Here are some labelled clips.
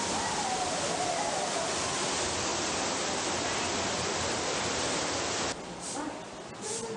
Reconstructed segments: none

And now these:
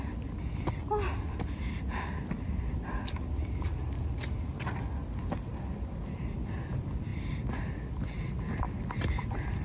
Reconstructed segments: none

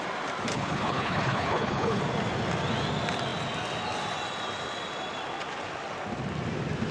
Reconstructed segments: 0.5-2.0

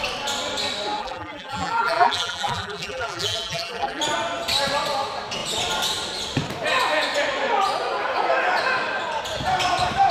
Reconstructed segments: 1.0-4.0

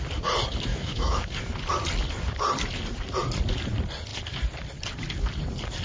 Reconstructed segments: 0.7-1.3